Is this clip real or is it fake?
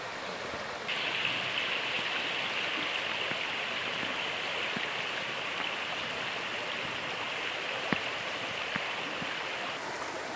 real